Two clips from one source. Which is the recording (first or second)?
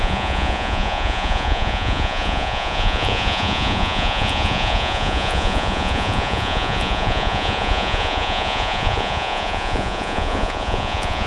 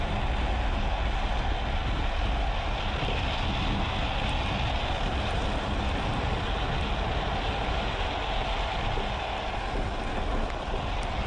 second